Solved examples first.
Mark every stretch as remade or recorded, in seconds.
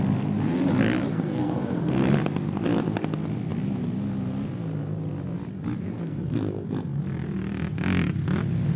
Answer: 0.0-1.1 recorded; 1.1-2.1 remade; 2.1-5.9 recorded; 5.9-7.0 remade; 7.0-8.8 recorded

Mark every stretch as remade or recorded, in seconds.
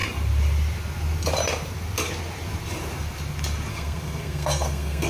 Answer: 0.0-3.7 recorded; 3.7-5.1 remade